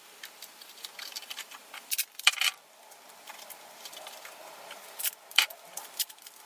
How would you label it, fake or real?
fake